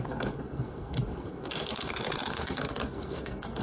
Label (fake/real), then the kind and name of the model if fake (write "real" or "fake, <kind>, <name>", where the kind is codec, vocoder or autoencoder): fake, codec, SNAC